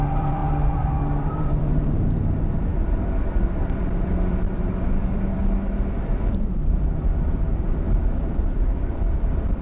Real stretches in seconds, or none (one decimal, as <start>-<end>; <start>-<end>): 5.4-6.0